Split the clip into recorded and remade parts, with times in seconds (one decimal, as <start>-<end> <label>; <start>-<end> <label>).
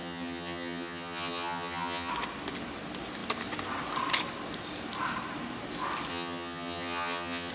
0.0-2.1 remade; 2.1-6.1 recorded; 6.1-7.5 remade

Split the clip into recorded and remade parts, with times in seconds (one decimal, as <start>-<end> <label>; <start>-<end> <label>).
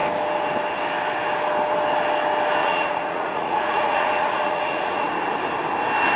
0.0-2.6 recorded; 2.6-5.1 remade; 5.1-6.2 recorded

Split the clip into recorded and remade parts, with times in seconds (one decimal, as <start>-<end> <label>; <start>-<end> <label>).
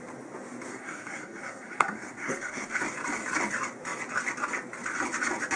0.0-0.7 recorded; 0.7-2.8 remade; 2.8-5.6 recorded